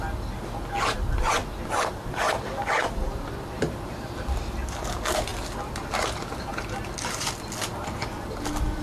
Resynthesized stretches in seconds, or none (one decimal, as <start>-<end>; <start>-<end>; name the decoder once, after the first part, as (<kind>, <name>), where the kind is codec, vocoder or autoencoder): none